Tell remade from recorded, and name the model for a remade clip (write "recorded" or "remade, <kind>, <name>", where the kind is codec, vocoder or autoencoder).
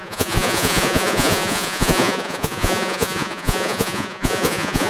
remade, vocoder, Vocos